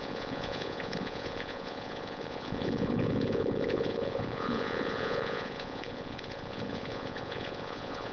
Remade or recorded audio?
remade